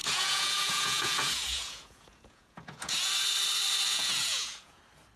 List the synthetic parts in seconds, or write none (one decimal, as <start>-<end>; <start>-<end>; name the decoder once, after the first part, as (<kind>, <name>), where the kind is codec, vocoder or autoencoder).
0.0-3.1 (vocoder, Vocos); 3.9-4.8